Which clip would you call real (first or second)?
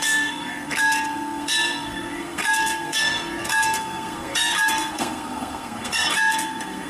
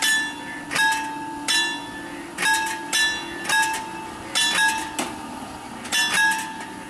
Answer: second